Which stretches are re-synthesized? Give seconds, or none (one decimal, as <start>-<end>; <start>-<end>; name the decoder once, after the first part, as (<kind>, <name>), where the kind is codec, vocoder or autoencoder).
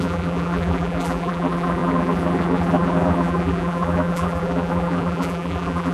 0.0-5.9 (vocoder, BigVGAN v2)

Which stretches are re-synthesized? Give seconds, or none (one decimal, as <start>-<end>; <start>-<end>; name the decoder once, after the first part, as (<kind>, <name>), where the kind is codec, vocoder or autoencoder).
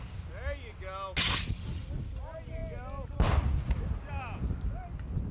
none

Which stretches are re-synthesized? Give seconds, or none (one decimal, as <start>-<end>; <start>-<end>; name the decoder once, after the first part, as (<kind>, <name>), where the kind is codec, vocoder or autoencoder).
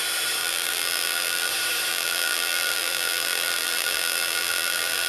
0.4-1.5 (vocoder, BigVGAN v2); 1.9-5.1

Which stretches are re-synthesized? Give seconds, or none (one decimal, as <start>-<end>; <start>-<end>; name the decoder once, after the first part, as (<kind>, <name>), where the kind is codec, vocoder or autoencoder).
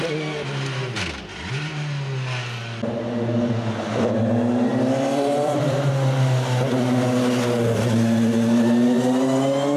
4.7-5.9 (vocoder, BigVGAN v2)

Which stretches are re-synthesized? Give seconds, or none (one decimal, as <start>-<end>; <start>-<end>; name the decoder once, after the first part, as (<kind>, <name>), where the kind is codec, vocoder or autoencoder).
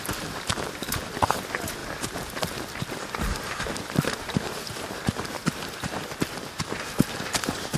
1.8-4.7 (vocoder, BigVGAN v2)